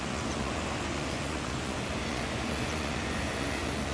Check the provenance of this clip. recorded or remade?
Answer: remade